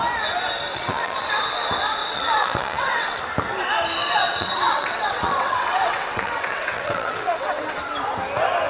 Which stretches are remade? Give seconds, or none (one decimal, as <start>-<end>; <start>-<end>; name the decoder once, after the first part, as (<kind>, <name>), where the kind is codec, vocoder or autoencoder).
0.7-1.3 (vocoder, WaveNeXt); 2.0-3.2; 4.0-7.8